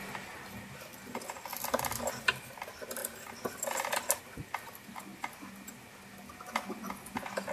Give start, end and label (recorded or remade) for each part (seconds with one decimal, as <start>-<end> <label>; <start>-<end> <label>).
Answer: 0.0-7.5 recorded